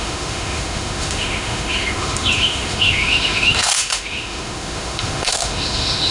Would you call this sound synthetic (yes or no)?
yes